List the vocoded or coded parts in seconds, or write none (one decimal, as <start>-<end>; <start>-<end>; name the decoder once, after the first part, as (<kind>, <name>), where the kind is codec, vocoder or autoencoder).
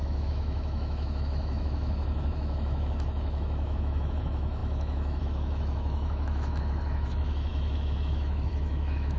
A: 0.0-9.2 (autoencoder, DAC-VAE)